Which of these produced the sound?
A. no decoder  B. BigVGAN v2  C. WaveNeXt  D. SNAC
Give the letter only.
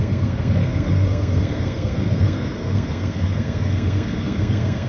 D